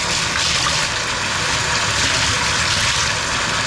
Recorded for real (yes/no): yes